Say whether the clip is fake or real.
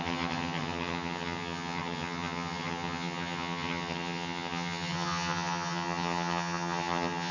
fake